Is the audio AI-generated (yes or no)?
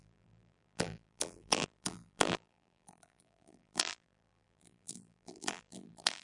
yes